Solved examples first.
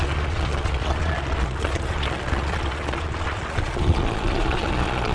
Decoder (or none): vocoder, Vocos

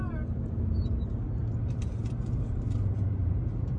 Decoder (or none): vocoder, BigVGAN v2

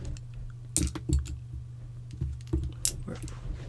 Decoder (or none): none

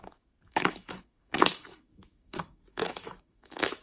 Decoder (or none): autoencoder, DAC-VAE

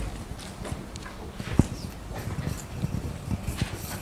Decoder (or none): none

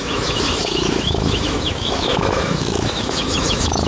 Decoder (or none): autoencoder, DAC-VAE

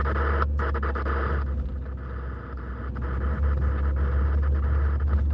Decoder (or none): none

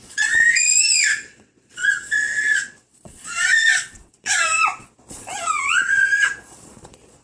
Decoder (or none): vocoder, Vocos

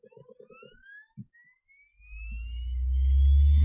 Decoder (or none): none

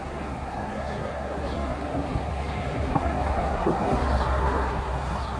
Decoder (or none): codec, SNAC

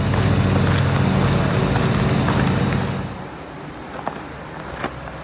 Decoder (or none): none